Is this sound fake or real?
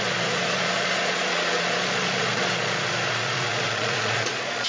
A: fake